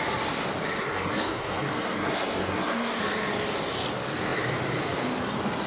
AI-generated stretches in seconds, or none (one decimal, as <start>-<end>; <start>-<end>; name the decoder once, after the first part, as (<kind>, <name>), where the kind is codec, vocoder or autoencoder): 0.8-3.0 (codec, SNAC)